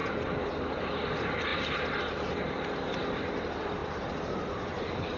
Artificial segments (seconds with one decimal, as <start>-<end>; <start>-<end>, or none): 3.8-4.5